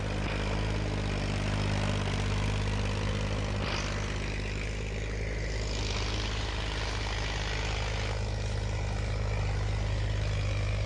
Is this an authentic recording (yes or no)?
yes